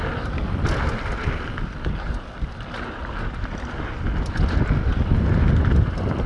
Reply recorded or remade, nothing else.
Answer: recorded